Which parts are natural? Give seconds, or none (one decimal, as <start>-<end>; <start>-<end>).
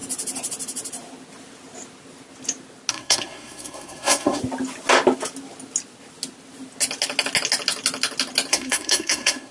0.0-2.9; 4.4-8.5